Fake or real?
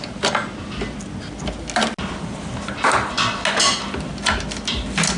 real